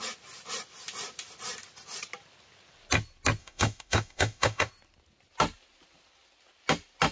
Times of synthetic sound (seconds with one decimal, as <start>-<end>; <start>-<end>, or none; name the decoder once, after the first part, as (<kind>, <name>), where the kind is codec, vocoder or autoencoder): 3.4-4.7 (autoencoder, DAC-VAE)